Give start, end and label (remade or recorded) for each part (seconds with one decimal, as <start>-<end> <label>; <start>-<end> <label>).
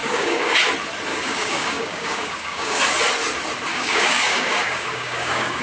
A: 0.0-0.6 remade; 0.6-1.1 recorded; 1.1-2.8 remade; 2.8-3.7 recorded; 3.7-5.6 remade